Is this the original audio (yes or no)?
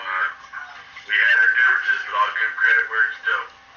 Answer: yes